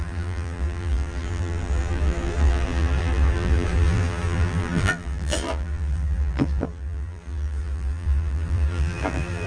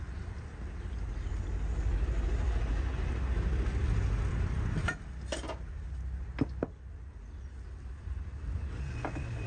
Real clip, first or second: second